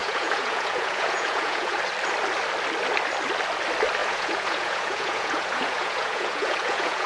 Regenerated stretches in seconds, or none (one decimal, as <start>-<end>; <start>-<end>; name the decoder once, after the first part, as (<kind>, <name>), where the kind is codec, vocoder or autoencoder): 0.0-1.8 (vocoder, Vocos); 4.0-7.1